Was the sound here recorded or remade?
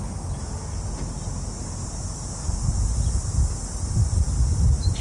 recorded